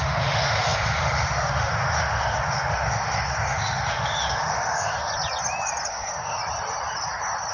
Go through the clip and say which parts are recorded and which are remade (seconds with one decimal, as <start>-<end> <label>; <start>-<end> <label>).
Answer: 0.0-5.1 remade; 5.1-5.9 recorded; 5.9-6.4 remade; 6.4-7.5 recorded